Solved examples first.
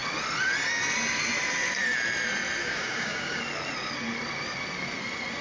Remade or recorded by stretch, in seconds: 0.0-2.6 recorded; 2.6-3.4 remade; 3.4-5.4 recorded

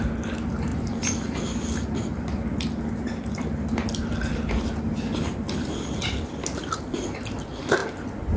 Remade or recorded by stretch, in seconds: 0.0-8.4 recorded

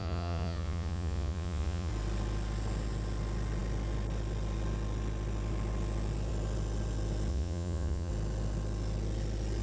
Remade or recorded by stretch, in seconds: 0.0-1.9 remade; 1.9-7.3 recorded; 7.3-8.1 remade; 8.1-9.6 recorded

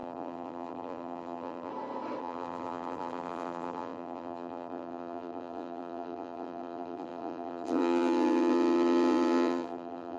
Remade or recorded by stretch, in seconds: 0.0-1.7 remade; 1.7-2.2 recorded; 2.2-10.2 remade

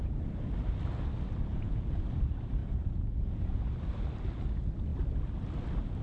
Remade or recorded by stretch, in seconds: 0.0-1.5 recorded; 1.5-2.1 remade; 2.1-2.6 recorded; 2.6-3.6 remade; 3.6-6.0 recorded